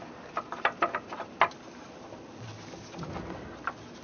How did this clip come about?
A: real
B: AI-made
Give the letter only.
A